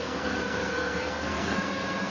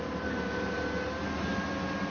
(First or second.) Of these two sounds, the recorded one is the second